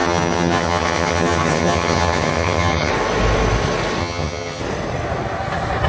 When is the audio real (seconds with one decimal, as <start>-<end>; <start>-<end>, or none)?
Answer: 2.9-4.0; 4.6-5.9